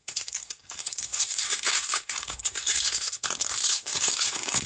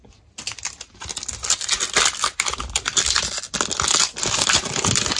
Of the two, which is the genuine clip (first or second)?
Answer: second